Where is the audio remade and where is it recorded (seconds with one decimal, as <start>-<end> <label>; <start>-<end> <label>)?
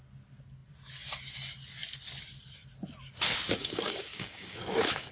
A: 0.0-3.6 recorded; 3.6-5.1 remade